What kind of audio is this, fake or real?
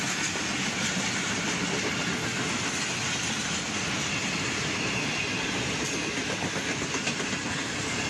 real